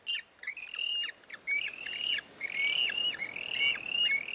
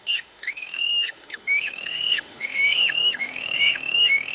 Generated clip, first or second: second